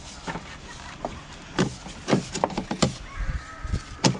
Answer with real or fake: real